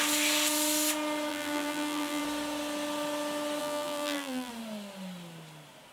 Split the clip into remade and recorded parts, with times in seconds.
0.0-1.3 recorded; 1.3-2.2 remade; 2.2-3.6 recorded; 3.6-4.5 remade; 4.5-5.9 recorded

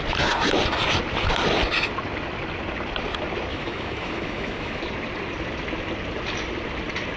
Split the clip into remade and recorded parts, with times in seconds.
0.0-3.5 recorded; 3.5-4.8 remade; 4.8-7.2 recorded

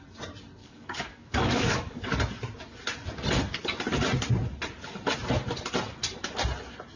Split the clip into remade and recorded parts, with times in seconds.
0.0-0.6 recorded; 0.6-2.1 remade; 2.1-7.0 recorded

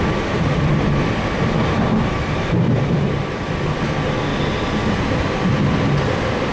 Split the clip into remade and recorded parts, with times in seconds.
0.0-6.5 recorded

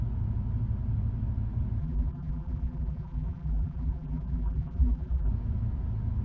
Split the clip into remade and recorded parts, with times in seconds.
0.0-1.8 recorded; 1.8-5.3 remade; 5.3-6.2 recorded

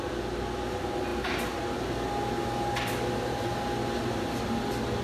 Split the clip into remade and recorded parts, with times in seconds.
0.0-5.0 recorded